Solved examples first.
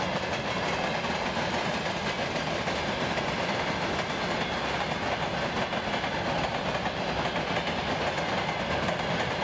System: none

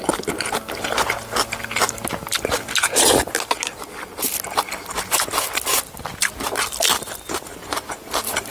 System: none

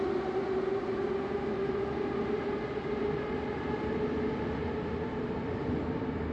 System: none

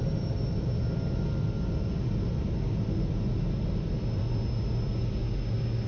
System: none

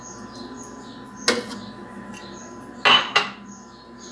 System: none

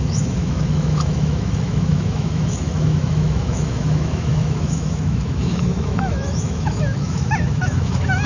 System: autoencoder, DAC-VAE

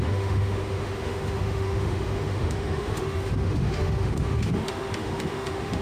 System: autoencoder, DAC-VAE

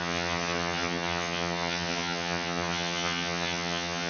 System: vocoder, HiFi-GAN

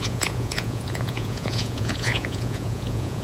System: vocoder, Vocos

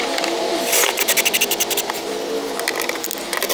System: none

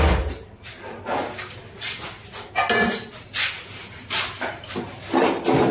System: none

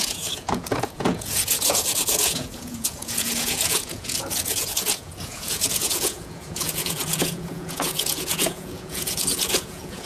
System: vocoder, Vocos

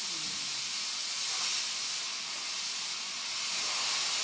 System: none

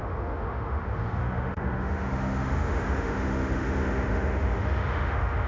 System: autoencoder, DAC-VAE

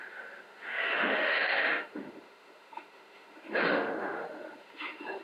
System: autoencoder, DAC-VAE